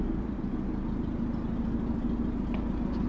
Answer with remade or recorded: recorded